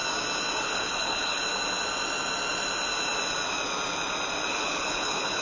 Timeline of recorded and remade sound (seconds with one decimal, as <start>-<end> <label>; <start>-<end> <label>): 0.0-0.6 recorded; 0.6-1.4 remade; 1.4-4.5 recorded; 4.5-5.4 remade